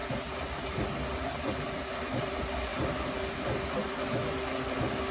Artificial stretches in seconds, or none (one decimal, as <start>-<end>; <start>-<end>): none